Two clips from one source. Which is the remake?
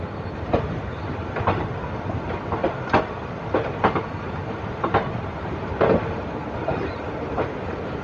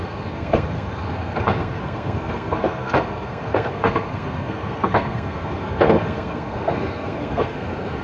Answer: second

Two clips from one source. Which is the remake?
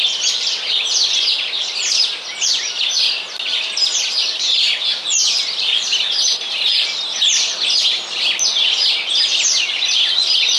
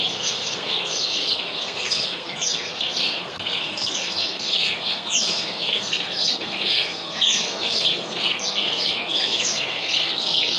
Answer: second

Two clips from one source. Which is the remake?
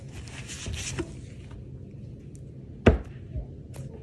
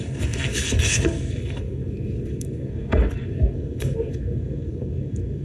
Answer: second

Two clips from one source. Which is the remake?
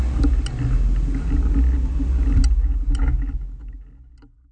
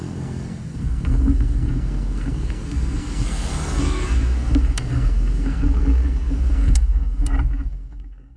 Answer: second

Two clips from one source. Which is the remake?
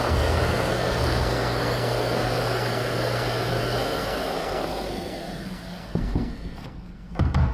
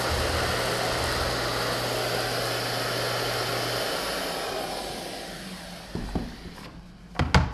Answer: first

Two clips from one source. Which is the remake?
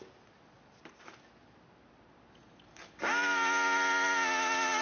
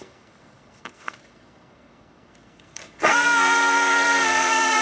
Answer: second